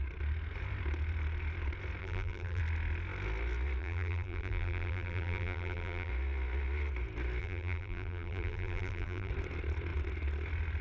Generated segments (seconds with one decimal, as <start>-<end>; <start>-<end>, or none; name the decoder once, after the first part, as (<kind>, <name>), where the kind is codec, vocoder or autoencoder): 2.0-2.6 (vocoder, BigVGAN v2); 3.8-6.1; 7.4-9.3